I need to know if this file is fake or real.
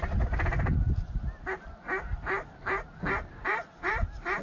real